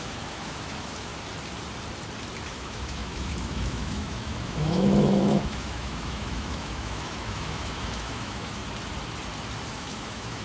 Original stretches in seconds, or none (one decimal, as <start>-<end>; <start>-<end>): 1.1-2.5; 8.6-9.7

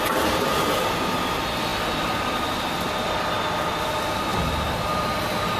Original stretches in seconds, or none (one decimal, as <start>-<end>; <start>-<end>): 0.0-5.6

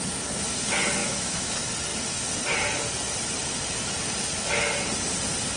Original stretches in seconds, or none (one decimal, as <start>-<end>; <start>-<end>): 0.0-1.0; 1.5-5.6

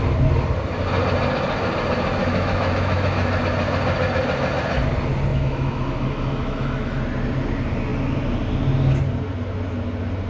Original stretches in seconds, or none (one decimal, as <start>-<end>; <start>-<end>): 0.0-2.2; 3.4-5.3; 7.0-10.3

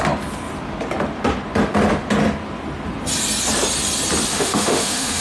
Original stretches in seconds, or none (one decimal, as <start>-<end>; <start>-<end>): 0.0-4.3